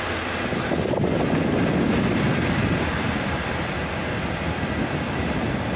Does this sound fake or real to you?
real